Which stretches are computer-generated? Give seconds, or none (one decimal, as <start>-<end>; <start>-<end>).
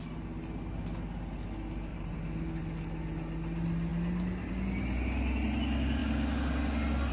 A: 1.9-2.5